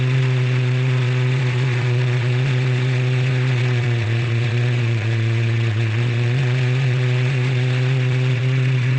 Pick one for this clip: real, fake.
fake